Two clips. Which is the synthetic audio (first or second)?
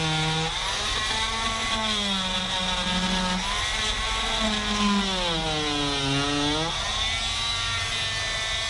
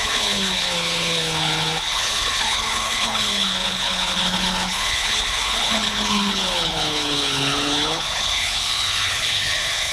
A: second